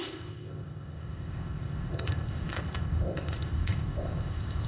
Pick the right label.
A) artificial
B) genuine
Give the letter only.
A